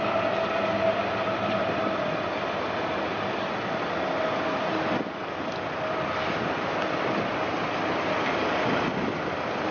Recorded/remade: recorded